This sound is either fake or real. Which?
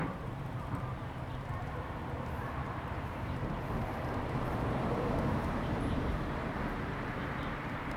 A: fake